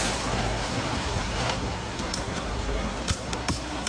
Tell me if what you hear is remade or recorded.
remade